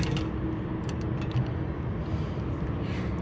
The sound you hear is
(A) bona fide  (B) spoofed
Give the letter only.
A